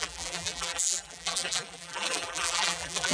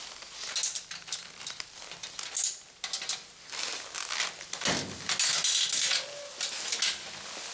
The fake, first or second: first